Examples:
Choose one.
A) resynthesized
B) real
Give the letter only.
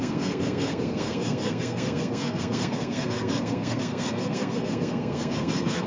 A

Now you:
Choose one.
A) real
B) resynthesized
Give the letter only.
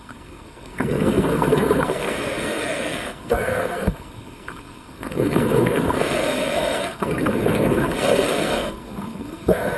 B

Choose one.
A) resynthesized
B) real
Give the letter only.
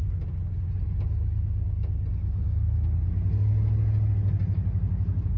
B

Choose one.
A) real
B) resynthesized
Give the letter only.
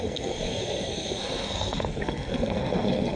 B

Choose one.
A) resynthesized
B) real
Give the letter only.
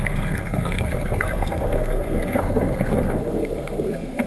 A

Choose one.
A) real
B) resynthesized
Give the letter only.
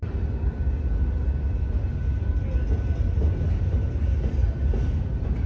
A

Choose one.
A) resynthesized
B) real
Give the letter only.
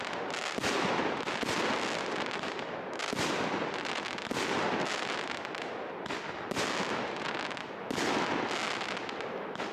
B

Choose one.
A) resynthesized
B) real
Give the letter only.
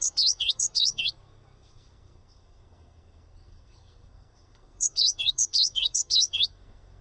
A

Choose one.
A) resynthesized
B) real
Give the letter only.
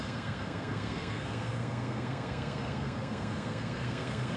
A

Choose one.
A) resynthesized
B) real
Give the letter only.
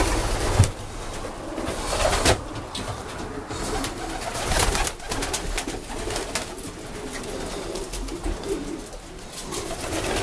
B